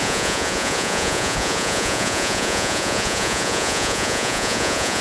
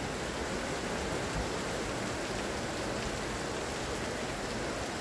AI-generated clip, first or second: first